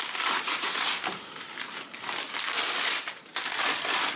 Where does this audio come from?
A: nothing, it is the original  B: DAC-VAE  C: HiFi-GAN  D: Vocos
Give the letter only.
A